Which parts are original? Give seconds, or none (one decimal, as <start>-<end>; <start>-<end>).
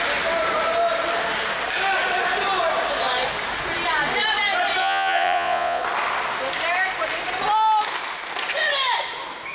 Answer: 0.0-4.8; 5.8-9.5